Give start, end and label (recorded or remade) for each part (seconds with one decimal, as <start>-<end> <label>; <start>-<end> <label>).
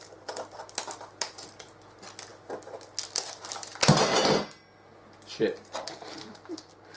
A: 0.0-7.0 recorded